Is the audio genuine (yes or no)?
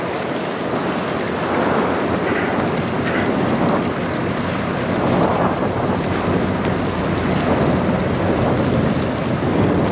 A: yes